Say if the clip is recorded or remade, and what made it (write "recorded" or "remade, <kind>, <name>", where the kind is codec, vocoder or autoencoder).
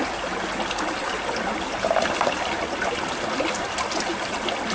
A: recorded